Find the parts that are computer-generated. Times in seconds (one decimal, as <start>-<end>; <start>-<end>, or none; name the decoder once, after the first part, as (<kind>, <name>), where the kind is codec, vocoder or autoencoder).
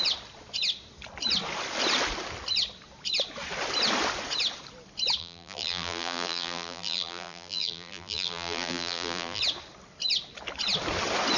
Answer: 5.2-9.4 (vocoder, BigVGAN v2)